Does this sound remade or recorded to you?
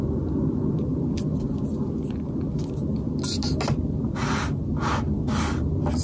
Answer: recorded